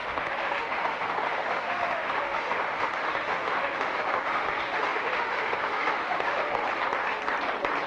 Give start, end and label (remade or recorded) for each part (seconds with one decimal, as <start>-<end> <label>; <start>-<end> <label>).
0.0-6.6 remade; 6.6-7.9 recorded